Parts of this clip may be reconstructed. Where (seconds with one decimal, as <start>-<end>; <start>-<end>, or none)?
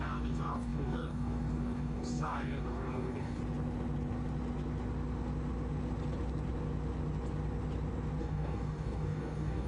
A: 0.0-3.4; 8.2-9.7